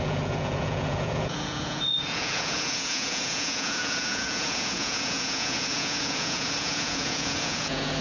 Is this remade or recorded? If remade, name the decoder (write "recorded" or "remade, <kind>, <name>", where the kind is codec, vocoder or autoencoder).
remade, vocoder, Vocos